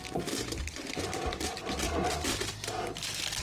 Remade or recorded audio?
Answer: remade